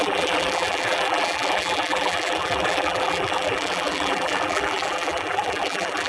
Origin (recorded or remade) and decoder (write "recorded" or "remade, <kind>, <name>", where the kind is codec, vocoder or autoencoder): remade, vocoder, BigVGAN v2